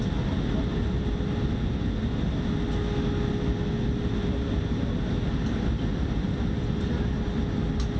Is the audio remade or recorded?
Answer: recorded